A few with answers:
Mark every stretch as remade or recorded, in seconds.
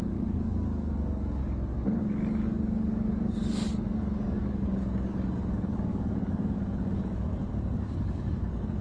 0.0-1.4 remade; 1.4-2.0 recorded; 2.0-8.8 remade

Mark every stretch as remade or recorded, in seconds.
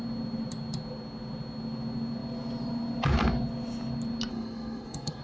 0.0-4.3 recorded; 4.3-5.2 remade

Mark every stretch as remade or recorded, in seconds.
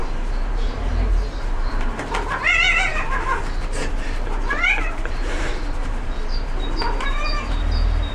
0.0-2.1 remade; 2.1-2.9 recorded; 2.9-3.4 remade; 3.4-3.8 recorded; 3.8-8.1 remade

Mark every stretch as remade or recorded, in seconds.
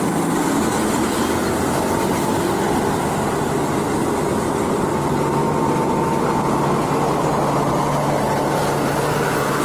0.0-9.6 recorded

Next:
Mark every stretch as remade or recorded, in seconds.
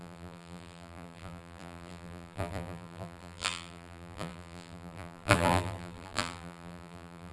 0.0-7.3 remade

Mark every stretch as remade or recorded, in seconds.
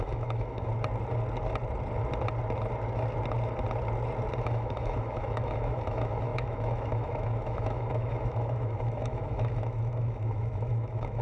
0.0-0.7 remade; 0.7-4.4 recorded; 4.4-11.2 remade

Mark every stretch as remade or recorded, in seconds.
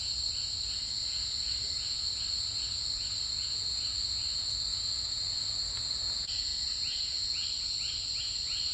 0.0-8.7 recorded